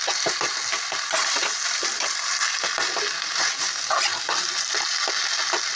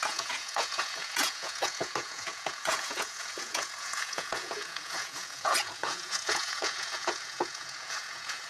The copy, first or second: second